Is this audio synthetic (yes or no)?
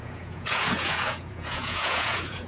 yes